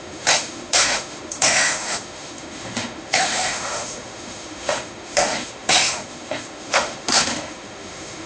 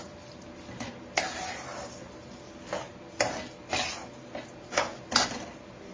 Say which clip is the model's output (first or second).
first